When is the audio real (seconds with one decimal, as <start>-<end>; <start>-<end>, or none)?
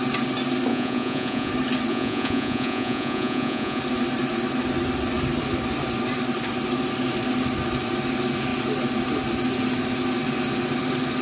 0.0-0.7; 1.5-1.9; 3.8-11.2